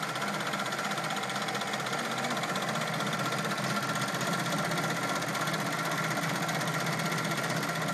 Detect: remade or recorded recorded